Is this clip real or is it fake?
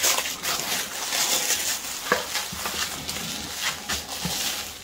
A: real